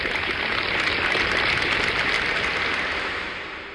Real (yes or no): no